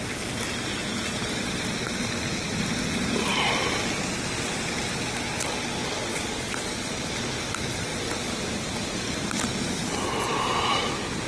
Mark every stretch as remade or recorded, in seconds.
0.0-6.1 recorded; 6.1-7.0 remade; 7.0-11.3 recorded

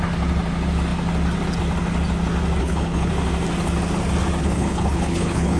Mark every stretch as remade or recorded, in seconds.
0.0-2.6 recorded; 2.6-3.1 remade; 3.1-4.4 recorded; 4.4-5.6 remade

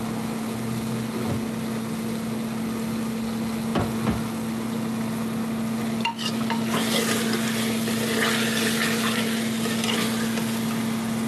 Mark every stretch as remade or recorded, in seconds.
0.0-11.3 recorded

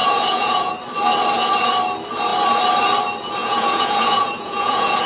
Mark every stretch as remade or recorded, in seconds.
0.0-0.7 remade; 0.7-3.4 recorded; 3.4-5.1 remade

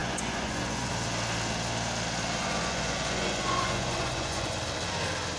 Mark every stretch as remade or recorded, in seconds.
0.0-0.9 remade; 0.9-2.4 recorded; 2.4-4.6 remade; 4.6-5.4 recorded

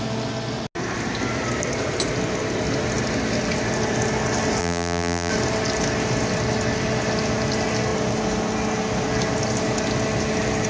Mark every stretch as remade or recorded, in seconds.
0.0-4.6 recorded; 4.6-5.3 remade; 5.3-10.7 recorded

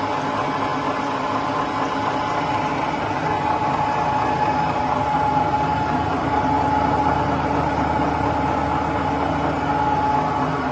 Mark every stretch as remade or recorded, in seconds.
0.0-5.7 recorded; 5.7-8.3 remade; 8.3-10.7 recorded

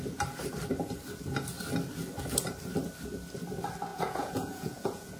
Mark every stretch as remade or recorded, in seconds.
0.0-3.9 recorded; 3.9-5.2 remade